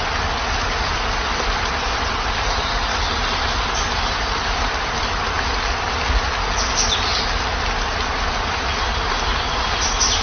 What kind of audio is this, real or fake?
real